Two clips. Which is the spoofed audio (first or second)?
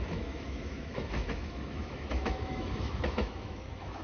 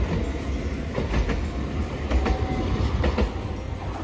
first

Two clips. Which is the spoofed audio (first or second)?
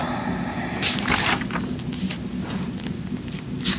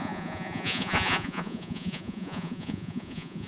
second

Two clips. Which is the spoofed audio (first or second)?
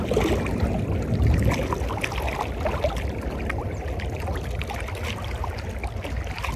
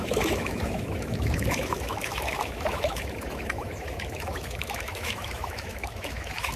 second